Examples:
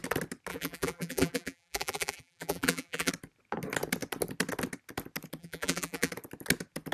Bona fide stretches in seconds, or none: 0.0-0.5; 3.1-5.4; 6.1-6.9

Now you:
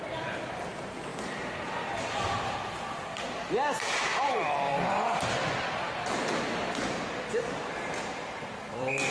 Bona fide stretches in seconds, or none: 1.1-3.0; 4.7-8.0

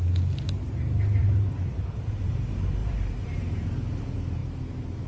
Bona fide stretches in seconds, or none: 0.0-1.2; 2.3-2.8; 3.7-5.1

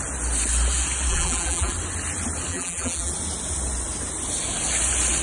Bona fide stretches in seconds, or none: 0.0-1.1; 1.7-2.5; 3.1-5.2

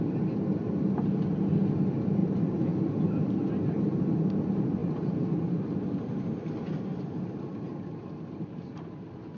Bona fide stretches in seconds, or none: 0.0-2.2; 4.0-4.8; 5.6-6.9

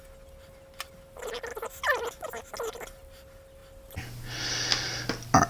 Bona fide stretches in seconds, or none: 0.0-5.5

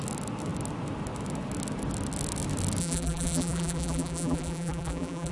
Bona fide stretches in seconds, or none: 0.0-2.8

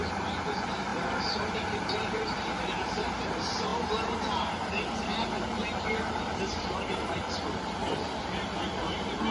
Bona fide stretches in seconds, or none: none